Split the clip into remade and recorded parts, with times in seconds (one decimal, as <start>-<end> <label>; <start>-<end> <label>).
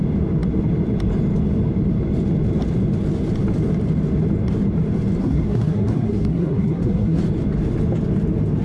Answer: 0.0-5.2 recorded; 5.2-7.2 remade; 7.2-8.6 recorded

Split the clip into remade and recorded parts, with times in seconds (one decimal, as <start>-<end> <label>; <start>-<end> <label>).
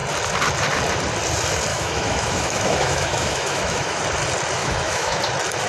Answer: 0.0-1.7 recorded; 1.7-4.0 remade; 4.0-4.6 recorded; 4.6-5.2 remade; 5.2-5.7 recorded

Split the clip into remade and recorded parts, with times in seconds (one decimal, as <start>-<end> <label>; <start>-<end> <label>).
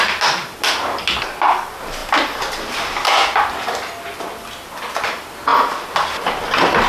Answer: 0.0-6.9 recorded